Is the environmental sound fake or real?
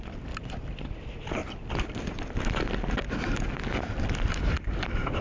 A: real